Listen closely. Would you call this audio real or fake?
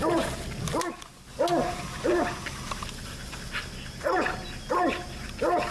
real